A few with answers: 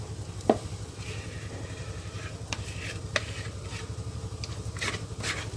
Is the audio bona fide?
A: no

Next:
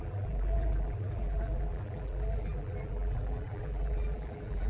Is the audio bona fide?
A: no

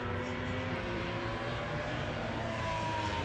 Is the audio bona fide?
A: no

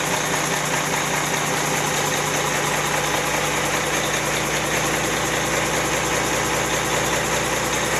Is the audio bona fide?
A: yes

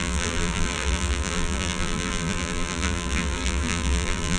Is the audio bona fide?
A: no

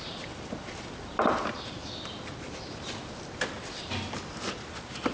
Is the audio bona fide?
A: no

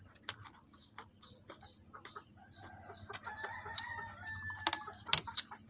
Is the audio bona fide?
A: no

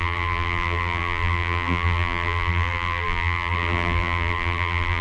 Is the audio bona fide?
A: no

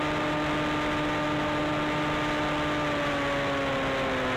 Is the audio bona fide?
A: yes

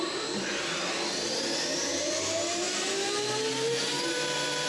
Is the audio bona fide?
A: no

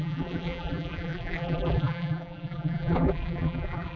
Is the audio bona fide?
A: no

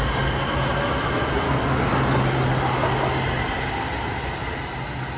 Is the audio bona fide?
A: yes